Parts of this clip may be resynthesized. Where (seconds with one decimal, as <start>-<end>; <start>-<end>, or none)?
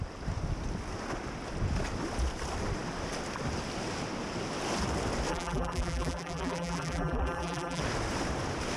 5.3-7.8